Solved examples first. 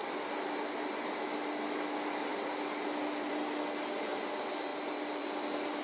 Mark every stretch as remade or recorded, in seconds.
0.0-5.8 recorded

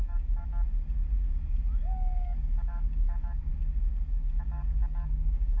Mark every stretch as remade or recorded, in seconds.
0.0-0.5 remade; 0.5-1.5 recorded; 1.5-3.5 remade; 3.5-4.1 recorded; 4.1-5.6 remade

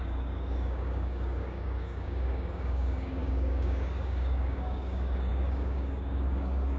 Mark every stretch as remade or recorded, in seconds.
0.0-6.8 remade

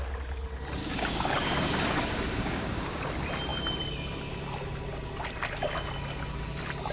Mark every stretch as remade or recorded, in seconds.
0.0-0.8 recorded; 0.8-3.0 remade; 3.0-6.9 recorded